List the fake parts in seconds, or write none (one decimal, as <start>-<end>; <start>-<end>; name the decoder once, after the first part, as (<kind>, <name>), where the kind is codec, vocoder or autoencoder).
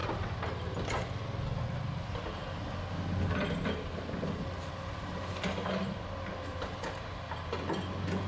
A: none